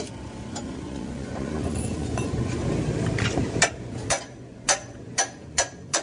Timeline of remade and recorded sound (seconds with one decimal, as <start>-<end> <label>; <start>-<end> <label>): 0.0-2.6 remade; 2.6-3.8 recorded; 3.8-6.0 remade

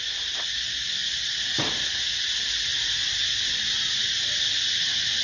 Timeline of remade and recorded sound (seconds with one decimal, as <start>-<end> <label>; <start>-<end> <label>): 0.0-5.2 recorded

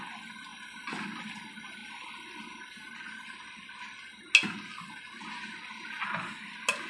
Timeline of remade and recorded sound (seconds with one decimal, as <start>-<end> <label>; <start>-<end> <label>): 0.0-6.9 recorded

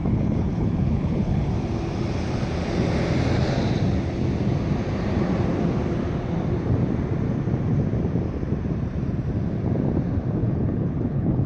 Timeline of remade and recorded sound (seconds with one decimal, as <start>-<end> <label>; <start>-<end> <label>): 0.0-1.5 remade; 1.5-10.4 recorded; 10.4-11.5 remade

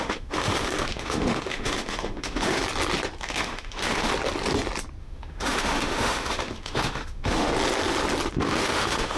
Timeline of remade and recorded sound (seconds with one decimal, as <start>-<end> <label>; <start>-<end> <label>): 0.0-2.6 remade; 2.6-3.2 recorded; 3.2-4.1 remade; 4.1-5.0 recorded; 5.0-7.5 remade; 7.5-8.3 recorded; 8.3-9.2 remade

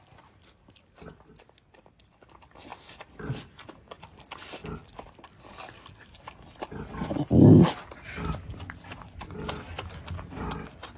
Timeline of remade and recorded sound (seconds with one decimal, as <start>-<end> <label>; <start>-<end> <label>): 0.0-11.0 recorded

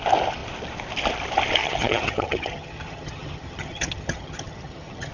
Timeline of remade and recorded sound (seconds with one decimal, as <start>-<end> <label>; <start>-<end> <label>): 0.0-1.6 recorded; 1.6-5.1 remade

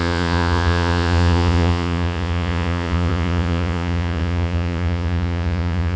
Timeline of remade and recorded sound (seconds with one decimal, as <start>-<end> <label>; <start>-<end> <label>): 0.0-6.0 remade